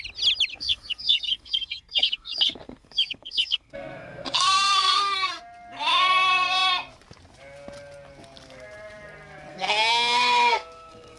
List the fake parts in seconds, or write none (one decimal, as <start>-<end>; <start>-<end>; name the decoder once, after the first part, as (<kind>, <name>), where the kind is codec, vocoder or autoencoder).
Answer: 0.5-5.4 (codec, SNAC); 9.5-11.2